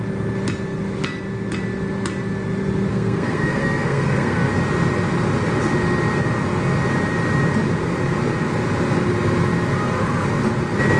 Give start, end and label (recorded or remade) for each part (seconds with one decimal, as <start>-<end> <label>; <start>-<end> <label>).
0.0-2.9 recorded; 2.9-4.5 remade; 4.5-11.0 recorded